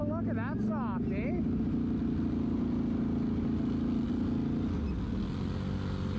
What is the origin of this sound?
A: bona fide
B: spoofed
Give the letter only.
A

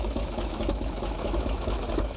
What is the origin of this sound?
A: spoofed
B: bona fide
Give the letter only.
A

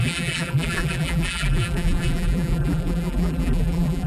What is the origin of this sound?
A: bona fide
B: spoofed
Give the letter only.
B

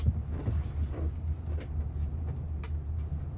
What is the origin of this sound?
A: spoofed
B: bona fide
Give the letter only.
B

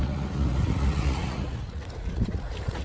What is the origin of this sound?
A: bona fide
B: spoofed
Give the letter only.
B